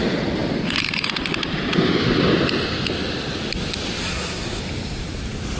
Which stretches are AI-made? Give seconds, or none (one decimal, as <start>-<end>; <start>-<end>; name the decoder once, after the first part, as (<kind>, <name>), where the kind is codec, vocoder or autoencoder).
4.0-4.6 (codec, SNAC)